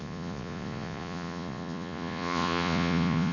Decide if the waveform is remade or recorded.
remade